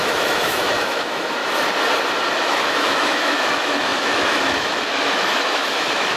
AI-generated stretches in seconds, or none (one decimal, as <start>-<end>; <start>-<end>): 0.0-1.4; 2.3-6.2